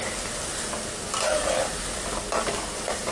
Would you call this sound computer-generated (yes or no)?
no